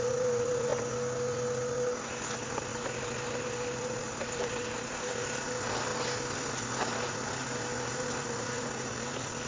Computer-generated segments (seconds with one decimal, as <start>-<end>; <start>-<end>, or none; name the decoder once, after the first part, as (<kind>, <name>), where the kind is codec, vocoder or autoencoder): 0.0-0.7 (vocoder, BigVGAN v2); 2.2-2.7; 3.4-5.9; 7.0-7.4; 7.9-9.5

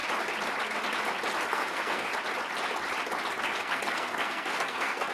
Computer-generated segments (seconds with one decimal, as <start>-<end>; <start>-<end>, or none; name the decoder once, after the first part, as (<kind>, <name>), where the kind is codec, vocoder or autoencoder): 1.5-2.1 (codec, SNAC); 3.4-5.1

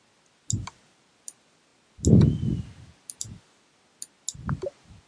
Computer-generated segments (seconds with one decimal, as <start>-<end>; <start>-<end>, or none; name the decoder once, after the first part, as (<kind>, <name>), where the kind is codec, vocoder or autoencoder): none

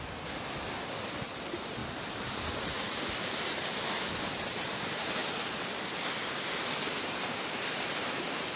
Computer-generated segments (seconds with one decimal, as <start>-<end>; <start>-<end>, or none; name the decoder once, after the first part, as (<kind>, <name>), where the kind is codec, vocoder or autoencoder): none

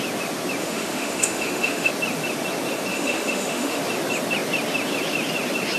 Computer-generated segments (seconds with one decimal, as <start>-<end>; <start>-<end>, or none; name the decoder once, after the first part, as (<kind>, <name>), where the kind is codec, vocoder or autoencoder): 0.6-1.9 (autoencoder, DAC-VAE); 2.9-3.8

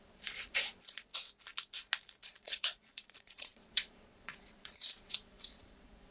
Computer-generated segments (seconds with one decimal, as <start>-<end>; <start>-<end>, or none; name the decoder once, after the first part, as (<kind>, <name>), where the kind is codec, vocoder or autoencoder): 0.0-1.1 (vocoder, Vocos); 2.2-6.1

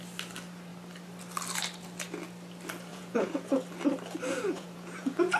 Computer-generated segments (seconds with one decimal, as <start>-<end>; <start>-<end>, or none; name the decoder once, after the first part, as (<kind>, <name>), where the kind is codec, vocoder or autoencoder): 2.9-3.5 (vocoder, Vocos); 4.3-5.4

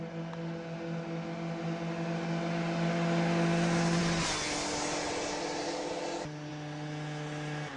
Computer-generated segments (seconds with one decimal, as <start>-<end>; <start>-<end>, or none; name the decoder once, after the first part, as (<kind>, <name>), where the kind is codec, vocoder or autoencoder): none